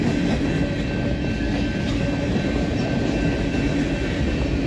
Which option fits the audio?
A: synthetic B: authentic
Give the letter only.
B